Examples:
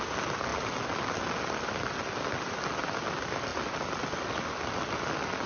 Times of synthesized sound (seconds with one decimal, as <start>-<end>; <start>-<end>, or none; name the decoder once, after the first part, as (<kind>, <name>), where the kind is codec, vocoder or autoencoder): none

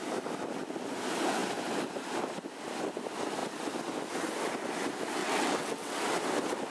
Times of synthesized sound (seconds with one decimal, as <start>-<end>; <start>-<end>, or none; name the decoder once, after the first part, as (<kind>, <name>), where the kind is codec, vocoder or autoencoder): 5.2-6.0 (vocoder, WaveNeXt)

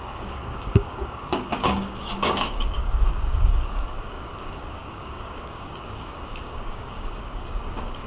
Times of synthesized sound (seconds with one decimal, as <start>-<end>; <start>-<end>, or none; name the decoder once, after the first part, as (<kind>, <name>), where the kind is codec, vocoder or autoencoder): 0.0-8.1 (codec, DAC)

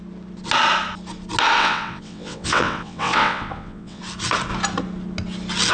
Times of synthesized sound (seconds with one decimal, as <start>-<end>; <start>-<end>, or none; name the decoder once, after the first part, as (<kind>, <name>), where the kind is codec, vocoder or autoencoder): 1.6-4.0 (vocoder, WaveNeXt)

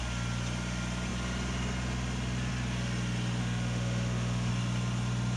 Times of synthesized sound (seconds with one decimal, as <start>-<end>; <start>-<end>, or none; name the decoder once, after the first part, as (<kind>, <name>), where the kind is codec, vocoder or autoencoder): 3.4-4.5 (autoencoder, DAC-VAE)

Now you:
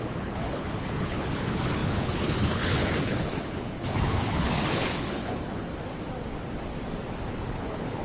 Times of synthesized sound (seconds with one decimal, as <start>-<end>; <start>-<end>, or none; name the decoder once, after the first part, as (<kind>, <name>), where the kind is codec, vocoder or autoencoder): 0.0-5.7 (codec, HILCodec); 7.3-8.0